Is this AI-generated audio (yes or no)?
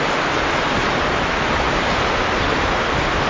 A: no